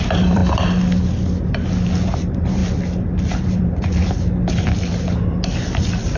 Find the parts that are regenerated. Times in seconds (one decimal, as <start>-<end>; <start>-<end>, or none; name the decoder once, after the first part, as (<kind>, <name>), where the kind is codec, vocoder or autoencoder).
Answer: 0.0-0.4 (vocoder, BigVGAN v2); 1.9-2.6; 3.4-6.2

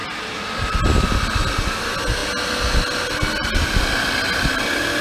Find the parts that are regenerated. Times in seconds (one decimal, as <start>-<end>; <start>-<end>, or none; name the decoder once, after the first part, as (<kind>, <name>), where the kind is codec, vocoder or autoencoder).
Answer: 0.0-1.2 (vocoder, BigVGAN v2)

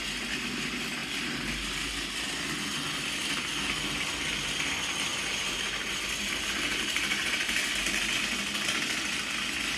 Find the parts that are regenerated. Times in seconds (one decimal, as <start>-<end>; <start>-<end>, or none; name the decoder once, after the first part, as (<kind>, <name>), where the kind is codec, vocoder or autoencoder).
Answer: 5.1-8.0 (vocoder, BigVGAN v2)

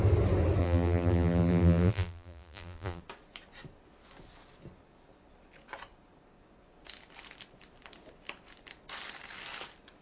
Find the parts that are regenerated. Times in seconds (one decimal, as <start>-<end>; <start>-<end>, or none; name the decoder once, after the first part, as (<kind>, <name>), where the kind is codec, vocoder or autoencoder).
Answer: 0.6-3.0 (vocoder, BigVGAN v2)

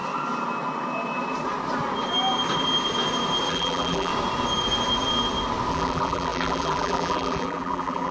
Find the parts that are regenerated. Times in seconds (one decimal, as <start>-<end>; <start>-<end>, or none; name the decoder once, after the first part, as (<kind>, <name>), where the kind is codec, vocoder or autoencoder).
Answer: 3.5-4.1 (vocoder, BigVGAN v2); 5.7-8.1

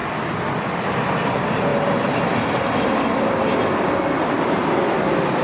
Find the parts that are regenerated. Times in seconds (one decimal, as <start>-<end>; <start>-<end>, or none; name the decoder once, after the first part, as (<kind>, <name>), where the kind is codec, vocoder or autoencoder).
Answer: 0.0-1.7 (vocoder, BigVGAN v2); 4.9-5.4